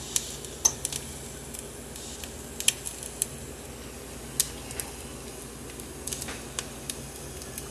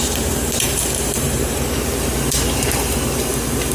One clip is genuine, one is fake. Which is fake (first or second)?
second